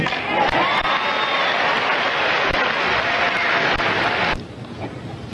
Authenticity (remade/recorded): recorded